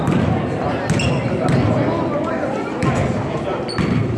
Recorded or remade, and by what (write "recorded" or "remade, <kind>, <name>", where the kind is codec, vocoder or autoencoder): recorded